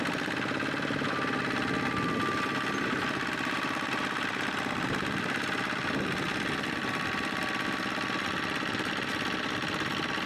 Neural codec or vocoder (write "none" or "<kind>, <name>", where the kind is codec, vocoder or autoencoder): none